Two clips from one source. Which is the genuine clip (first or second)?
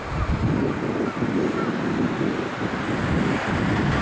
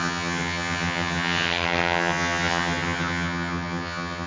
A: first